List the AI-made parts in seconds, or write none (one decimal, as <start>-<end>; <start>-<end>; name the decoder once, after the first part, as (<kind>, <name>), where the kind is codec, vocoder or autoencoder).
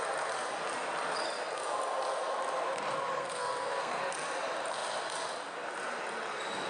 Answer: 3.2-4.0 (codec, SNAC)